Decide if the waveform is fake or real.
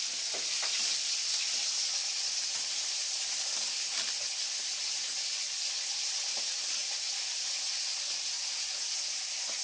real